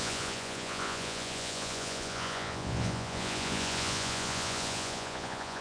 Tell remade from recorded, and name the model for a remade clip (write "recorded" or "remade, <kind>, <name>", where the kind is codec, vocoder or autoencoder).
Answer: remade, vocoder, Vocos